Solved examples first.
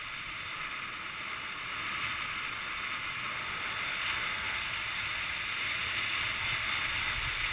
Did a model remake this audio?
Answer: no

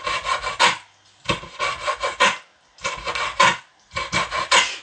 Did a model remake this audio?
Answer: no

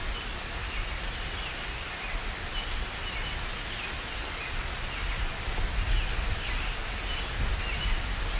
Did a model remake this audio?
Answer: no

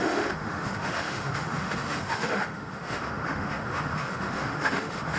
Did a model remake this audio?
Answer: yes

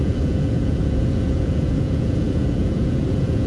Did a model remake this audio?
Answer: yes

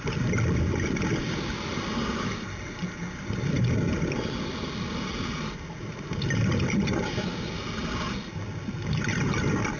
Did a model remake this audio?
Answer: no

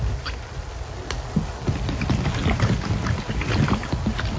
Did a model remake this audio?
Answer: no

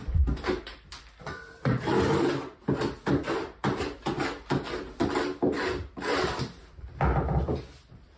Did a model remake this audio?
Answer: no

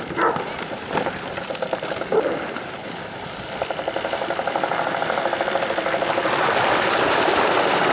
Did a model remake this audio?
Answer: no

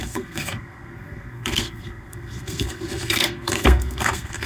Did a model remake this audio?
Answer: yes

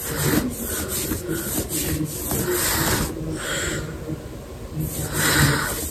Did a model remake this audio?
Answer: no